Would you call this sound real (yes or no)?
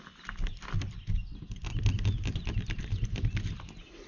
yes